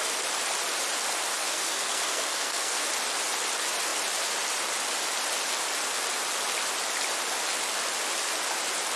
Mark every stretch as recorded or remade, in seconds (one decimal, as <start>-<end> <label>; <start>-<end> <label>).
0.0-1.4 recorded; 1.4-2.9 remade; 2.9-9.0 recorded